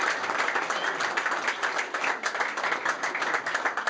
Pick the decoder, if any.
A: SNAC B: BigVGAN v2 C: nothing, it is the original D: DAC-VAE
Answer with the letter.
C